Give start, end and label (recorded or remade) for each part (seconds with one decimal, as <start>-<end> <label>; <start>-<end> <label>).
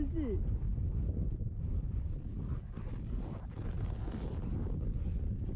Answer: 0.0-5.6 recorded